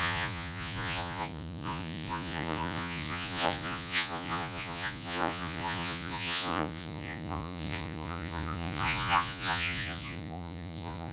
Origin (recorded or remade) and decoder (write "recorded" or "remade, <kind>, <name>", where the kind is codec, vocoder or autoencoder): remade, vocoder, Vocos